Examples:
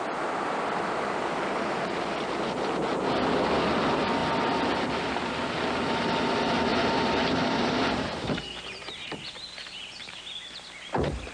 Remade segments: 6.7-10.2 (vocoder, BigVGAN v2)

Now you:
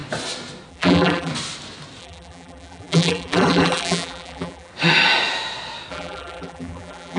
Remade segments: 0.7-1.3 (vocoder, BigVGAN v2); 2.0-4.7; 5.9-7.2